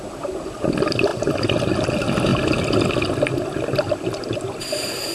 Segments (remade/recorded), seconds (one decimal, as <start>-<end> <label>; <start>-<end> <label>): 0.0-5.1 recorded